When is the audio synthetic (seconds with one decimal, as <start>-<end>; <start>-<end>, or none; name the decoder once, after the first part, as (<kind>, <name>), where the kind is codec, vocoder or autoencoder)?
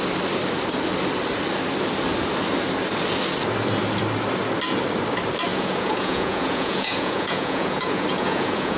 5.5-8.8 (vocoder, Vocos)